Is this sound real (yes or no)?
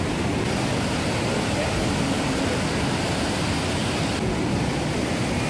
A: yes